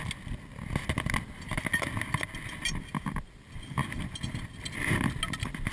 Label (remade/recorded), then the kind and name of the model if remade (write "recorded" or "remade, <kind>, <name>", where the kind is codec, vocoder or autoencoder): recorded